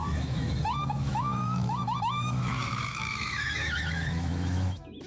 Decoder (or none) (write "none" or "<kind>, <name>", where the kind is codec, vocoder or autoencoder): autoencoder, DAC-VAE